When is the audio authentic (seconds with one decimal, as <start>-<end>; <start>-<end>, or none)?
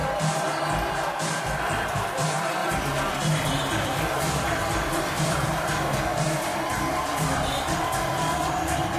6.5-7.0